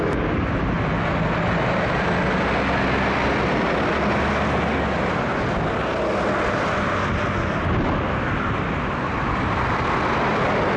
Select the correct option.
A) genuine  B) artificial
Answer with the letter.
A